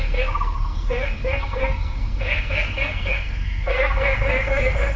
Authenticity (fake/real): fake